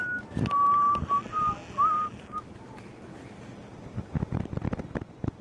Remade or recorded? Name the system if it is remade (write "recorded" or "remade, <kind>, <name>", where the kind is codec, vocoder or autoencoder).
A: recorded